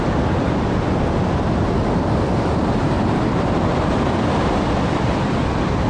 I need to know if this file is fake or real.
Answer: real